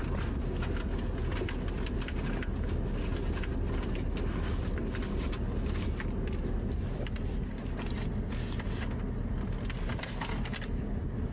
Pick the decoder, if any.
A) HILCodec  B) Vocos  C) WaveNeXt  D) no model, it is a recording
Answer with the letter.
D